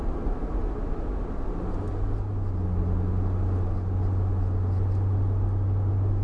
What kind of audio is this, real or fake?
real